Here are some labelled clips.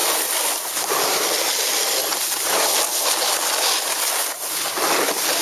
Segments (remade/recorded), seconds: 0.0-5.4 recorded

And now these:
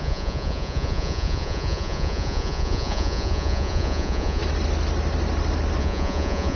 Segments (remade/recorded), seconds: 0.0-4.4 remade; 4.4-5.8 recorded; 5.8-6.6 remade

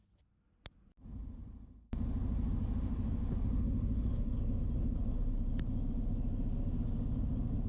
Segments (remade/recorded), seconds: 0.0-7.7 recorded

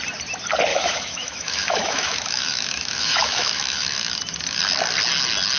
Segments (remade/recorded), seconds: 0.0-0.7 recorded; 0.7-4.1 remade; 4.1-5.6 recorded

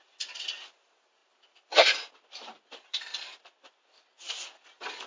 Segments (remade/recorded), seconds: 0.0-5.1 recorded

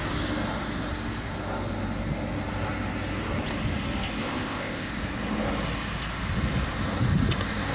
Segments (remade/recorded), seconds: 0.0-4.2 recorded; 4.2-4.9 remade; 4.9-7.7 recorded

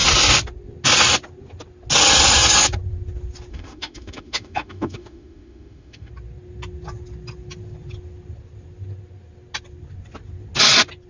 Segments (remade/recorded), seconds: 0.0-3.5 recorded; 3.5-6.1 remade; 6.1-11.1 recorded

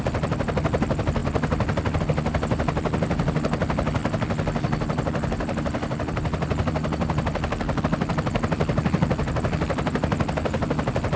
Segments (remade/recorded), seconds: 0.0-11.2 recorded